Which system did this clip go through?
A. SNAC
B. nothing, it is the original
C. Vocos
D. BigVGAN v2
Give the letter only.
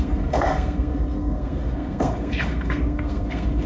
A